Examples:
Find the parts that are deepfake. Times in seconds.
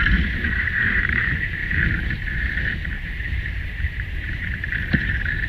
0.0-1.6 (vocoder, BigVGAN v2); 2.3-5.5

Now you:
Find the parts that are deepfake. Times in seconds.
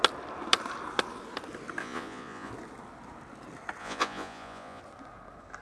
1.8-2.5 (vocoder, Vocos); 3.8-4.8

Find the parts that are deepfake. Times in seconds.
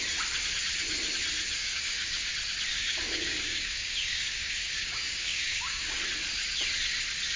1.6-2.3 (codec, DAC); 2.7-6.0